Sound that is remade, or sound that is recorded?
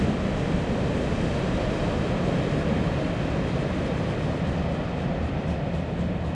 recorded